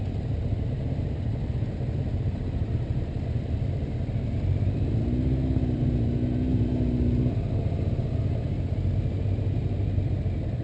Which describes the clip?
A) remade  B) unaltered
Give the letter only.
B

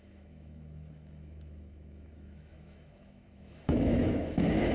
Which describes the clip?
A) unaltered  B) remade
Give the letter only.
B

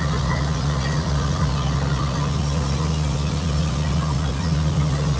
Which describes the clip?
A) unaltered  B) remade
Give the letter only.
B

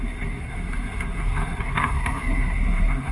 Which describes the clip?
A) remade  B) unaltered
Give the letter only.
A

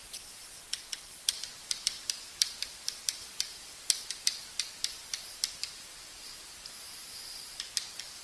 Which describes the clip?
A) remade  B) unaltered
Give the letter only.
A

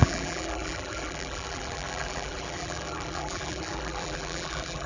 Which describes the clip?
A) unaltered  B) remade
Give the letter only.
B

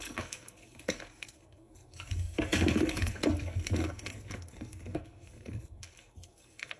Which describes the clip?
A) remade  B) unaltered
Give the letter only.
A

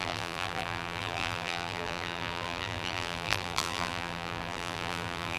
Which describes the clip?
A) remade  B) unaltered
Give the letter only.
A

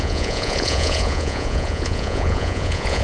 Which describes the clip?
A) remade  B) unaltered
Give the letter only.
A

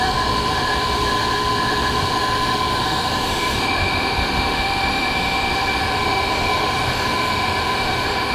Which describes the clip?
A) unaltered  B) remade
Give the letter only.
B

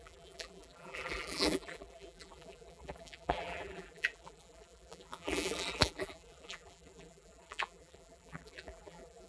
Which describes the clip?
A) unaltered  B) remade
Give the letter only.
B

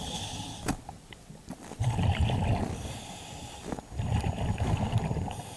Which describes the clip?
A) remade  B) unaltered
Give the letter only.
A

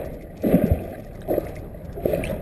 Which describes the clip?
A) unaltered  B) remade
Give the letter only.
A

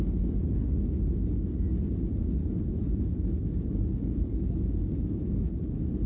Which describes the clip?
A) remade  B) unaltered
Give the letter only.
B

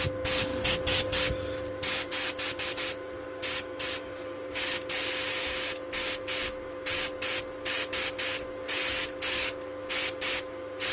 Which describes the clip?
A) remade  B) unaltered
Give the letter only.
B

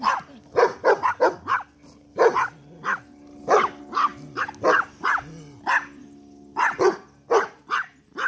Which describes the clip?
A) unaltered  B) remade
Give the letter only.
A